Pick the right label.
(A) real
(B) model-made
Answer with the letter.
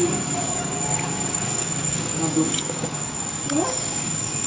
B